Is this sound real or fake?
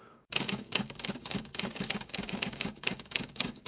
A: fake